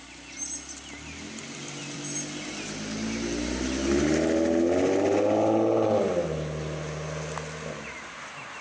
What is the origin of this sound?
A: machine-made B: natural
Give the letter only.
B